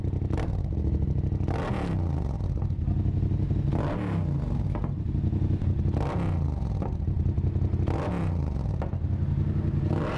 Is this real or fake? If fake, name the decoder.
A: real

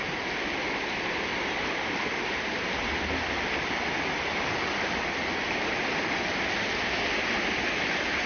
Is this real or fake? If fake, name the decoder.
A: real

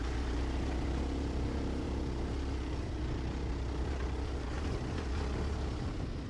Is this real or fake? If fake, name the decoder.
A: real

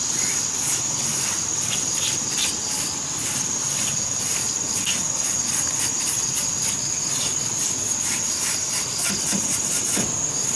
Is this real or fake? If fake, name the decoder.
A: real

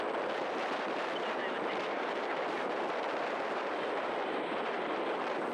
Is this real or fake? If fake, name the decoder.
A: real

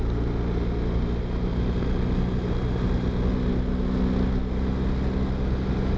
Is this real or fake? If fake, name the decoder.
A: real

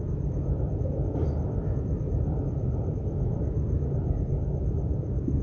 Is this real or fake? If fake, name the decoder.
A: fake, vocoder, BigVGAN v2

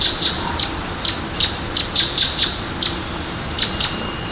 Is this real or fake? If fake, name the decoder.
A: real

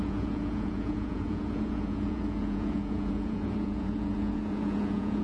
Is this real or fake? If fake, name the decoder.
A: fake, vocoder, Vocos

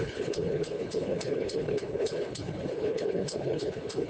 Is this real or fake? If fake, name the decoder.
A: fake, codec, HILCodec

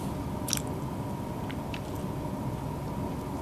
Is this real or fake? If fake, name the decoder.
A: real